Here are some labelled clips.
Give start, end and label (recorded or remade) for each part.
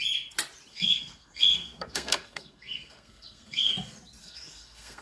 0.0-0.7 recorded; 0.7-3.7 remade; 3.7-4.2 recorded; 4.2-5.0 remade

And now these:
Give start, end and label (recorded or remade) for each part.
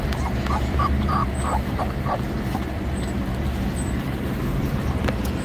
0.0-5.4 remade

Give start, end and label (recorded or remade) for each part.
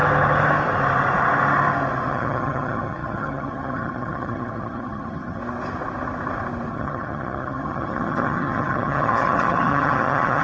0.0-2.1 recorded; 2.1-5.4 remade; 5.4-6.7 recorded; 6.7-10.4 remade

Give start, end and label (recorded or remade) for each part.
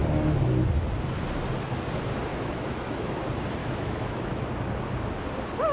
0.0-2.3 recorded; 2.3-3.2 remade; 3.2-3.6 recorded; 3.6-4.5 remade; 4.5-5.7 recorded